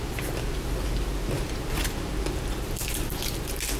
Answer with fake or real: real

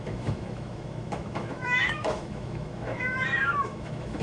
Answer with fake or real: fake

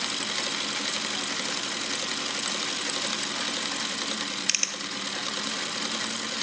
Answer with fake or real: real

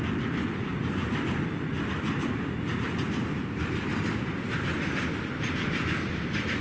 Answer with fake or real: fake